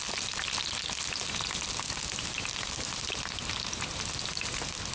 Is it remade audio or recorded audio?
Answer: recorded